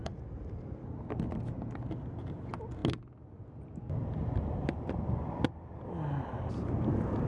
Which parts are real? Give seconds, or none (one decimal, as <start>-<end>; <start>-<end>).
0.0-7.3